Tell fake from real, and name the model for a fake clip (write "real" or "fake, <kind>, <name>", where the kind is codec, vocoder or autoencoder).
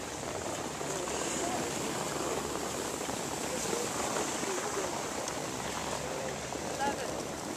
fake, vocoder, BigVGAN v2